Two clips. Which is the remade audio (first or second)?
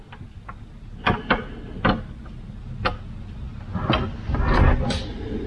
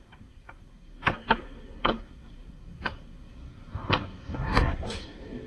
second